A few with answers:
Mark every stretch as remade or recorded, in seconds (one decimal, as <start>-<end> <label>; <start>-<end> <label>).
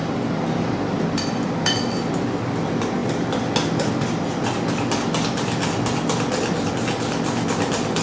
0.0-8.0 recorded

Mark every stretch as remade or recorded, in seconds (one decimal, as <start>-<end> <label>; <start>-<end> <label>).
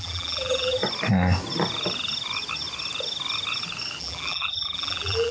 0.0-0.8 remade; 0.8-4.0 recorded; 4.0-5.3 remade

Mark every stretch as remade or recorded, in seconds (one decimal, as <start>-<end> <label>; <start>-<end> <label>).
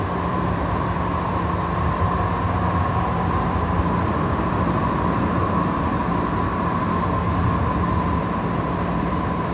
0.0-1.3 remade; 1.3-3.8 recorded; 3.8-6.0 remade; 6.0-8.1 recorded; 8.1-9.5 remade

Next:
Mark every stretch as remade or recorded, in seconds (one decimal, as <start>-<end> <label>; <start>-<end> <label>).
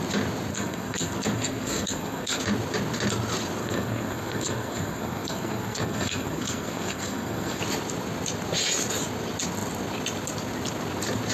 0.0-0.5 recorded; 0.5-2.4 remade; 2.4-3.6 recorded; 3.6-7.6 remade; 7.6-11.3 recorded